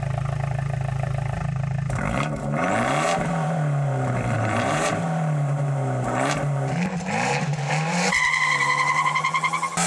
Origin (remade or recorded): remade